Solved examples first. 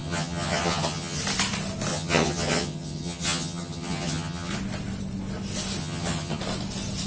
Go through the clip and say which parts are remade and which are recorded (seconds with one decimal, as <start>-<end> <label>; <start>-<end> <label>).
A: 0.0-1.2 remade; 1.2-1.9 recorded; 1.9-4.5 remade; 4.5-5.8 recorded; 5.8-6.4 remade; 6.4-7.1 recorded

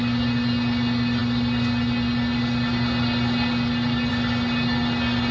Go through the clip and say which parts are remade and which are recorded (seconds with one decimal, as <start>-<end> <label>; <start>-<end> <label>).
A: 0.0-5.3 recorded

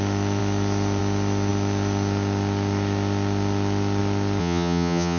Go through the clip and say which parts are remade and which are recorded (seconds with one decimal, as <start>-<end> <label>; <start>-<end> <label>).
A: 0.0-4.4 recorded; 4.4-5.2 remade

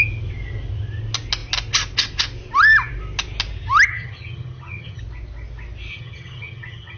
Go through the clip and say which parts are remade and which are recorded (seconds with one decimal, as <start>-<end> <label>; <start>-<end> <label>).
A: 0.0-3.9 recorded; 3.9-5.0 remade; 5.0-5.9 recorded; 5.9-7.0 remade

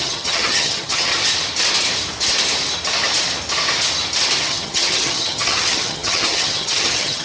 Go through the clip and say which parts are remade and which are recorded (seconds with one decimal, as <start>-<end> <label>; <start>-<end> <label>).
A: 0.0-1.1 remade; 1.1-4.4 recorded; 4.4-7.2 remade

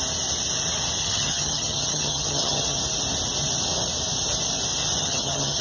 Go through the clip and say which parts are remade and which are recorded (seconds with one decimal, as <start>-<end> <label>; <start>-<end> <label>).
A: 0.0-1.0 recorded; 1.0-2.8 remade; 2.8-5.0 recorded; 5.0-5.6 remade